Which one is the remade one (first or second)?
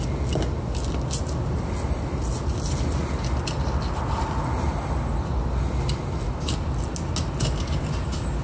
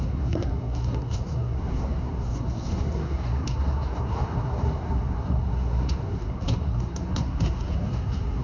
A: second